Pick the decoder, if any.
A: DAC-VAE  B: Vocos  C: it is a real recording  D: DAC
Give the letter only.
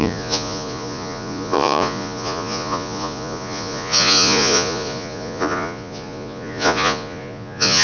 B